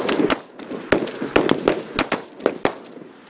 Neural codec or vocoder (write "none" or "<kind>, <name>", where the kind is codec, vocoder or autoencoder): none